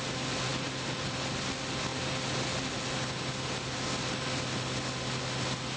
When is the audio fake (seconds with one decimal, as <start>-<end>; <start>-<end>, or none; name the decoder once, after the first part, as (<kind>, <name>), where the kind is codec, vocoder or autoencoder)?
0.5-1.3 (vocoder, BigVGAN v2)